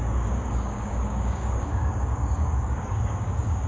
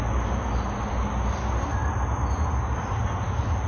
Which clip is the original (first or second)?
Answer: second